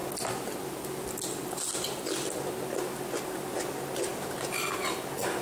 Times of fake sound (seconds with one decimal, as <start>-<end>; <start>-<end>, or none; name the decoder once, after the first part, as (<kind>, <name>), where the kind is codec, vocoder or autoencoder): none